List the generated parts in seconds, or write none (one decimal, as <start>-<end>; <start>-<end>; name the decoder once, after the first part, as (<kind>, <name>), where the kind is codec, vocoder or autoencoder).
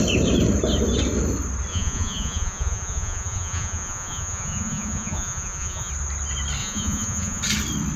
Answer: 1.7-5.9 (vocoder, Vocos); 6.6-7.4